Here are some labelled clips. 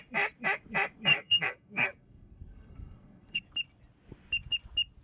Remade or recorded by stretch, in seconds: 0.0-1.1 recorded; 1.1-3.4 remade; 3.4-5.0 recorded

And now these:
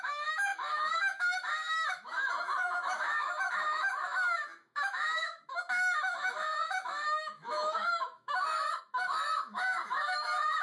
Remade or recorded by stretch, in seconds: 0.0-10.6 remade